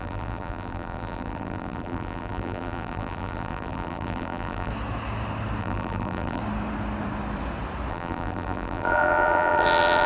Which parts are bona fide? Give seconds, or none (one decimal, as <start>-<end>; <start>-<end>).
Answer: 4.7-5.6; 6.4-7.9